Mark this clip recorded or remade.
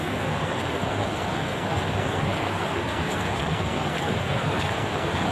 remade